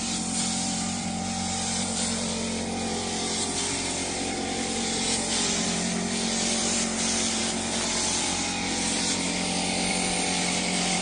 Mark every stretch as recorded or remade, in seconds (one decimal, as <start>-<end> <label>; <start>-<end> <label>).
0.0-7.4 remade; 7.4-9.9 recorded; 9.9-11.0 remade